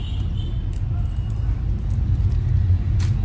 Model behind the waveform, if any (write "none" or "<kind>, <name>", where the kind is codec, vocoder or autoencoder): none